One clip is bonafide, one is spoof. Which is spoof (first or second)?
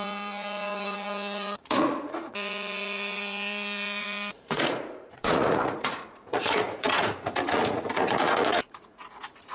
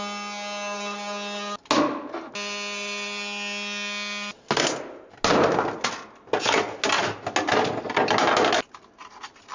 first